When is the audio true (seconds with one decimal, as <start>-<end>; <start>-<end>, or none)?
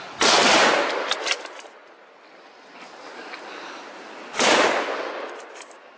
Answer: 0.0-6.0